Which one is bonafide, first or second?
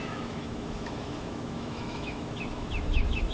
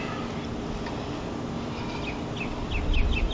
second